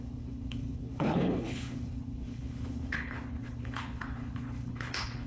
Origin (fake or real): fake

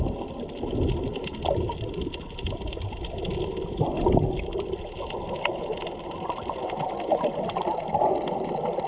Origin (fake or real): real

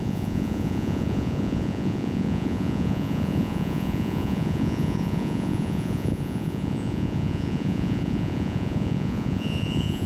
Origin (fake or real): fake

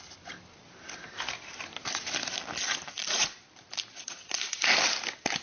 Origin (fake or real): real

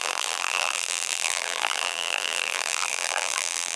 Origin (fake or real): fake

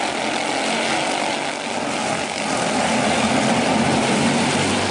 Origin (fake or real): real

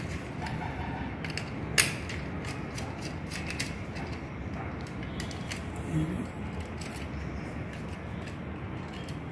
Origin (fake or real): real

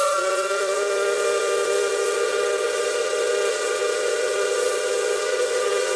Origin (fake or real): fake